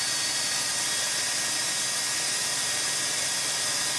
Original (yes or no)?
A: yes